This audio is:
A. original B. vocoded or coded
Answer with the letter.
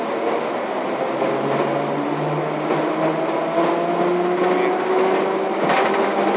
A